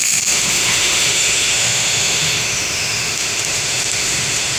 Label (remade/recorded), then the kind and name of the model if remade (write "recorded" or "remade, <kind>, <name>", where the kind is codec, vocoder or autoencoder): remade, autoencoder, DAC-VAE